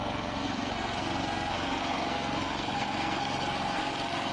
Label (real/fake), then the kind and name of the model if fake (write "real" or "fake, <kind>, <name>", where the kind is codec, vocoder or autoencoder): fake, codec, SNAC